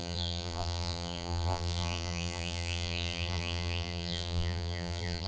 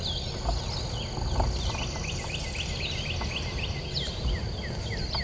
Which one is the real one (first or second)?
second